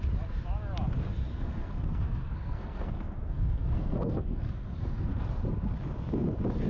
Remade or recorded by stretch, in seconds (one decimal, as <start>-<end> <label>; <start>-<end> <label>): 0.0-1.3 recorded; 1.3-5.3 remade; 5.3-6.7 recorded